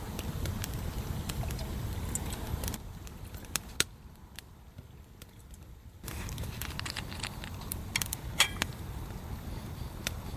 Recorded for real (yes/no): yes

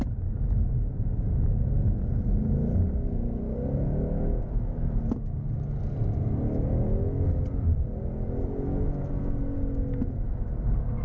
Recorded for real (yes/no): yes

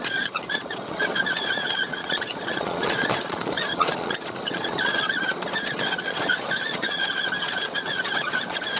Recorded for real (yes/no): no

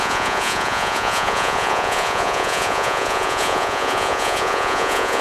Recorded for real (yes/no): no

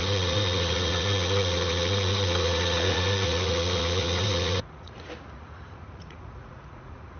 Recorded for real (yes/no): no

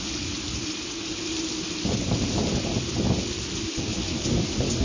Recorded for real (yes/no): yes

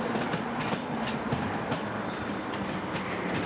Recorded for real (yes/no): yes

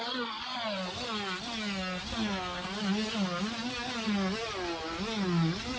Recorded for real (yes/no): yes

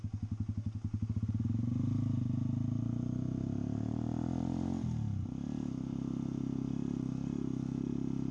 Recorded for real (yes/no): yes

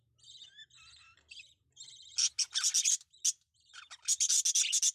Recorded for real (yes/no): yes